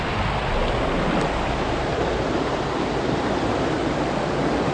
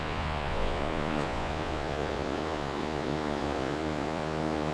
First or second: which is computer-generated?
second